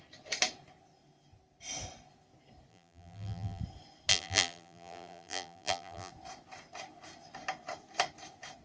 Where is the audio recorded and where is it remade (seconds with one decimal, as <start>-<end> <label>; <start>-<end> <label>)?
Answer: 0.0-2.7 recorded; 2.7-3.6 remade; 3.6-4.1 recorded; 4.1-6.1 remade; 6.1-8.6 recorded